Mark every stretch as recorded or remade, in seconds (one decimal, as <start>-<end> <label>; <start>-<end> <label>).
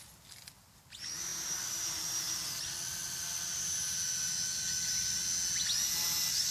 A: 0.0-1.3 recorded; 1.3-2.6 remade; 2.6-6.5 recorded